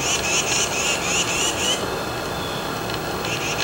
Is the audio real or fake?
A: real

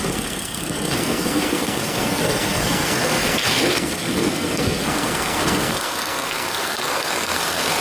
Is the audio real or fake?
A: fake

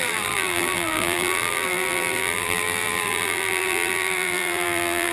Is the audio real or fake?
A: fake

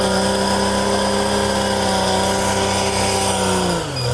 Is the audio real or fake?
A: real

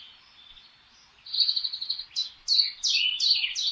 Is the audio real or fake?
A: real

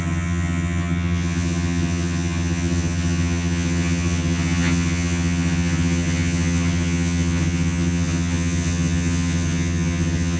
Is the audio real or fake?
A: fake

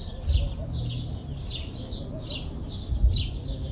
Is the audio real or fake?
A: real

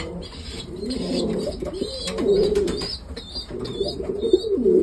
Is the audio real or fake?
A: fake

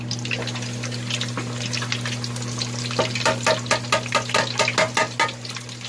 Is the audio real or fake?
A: real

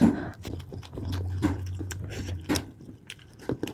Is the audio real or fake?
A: fake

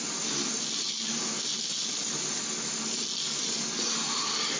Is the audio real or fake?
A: real